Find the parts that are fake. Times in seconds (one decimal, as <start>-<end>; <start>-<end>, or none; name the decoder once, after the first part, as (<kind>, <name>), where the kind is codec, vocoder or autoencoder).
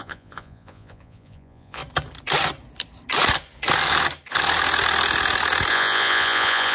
0.0-1.8 (vocoder, Vocos); 5.7-6.7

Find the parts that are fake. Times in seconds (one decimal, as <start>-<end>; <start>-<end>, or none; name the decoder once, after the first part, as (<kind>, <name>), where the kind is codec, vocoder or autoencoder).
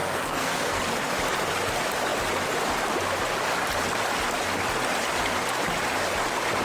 0.0-0.8 (codec, SNAC)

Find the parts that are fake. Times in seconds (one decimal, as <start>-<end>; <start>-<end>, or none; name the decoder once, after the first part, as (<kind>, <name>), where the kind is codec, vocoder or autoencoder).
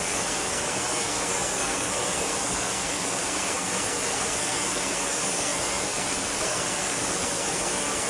0.0-8.1 (codec, SNAC)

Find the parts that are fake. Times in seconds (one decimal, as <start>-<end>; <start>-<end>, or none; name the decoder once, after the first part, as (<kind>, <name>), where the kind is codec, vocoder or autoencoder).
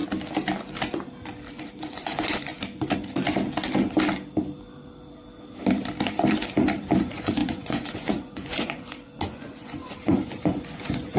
1.8-2.5 (vocoder, Vocos); 7.0-11.2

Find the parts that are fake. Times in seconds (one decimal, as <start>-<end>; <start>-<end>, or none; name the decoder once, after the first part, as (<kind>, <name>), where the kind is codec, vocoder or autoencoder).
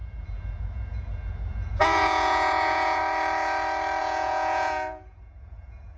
0.0-3.0 (vocoder, Vocos); 4.0-6.0